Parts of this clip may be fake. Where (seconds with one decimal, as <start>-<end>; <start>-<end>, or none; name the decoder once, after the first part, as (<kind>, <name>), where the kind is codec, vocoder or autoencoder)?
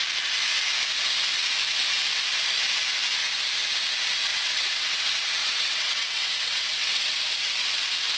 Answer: 4.3-5.0 (vocoder, WaveNeXt); 5.4-7.2